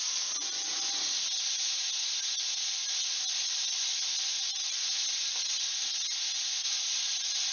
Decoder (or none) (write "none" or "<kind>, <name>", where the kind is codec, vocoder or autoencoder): none